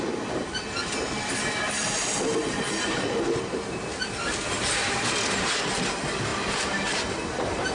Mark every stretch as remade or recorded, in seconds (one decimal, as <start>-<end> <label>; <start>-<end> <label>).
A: 0.0-4.8 recorded; 4.8-5.7 remade; 5.7-6.3 recorded; 6.3-7.7 remade